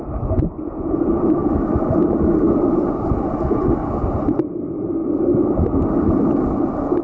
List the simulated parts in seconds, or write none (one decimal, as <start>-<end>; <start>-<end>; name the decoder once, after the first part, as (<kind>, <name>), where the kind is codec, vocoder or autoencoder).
none

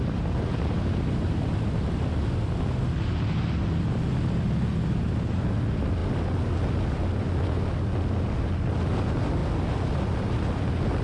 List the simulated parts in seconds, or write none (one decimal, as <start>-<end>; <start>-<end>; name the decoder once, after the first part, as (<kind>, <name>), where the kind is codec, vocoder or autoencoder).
none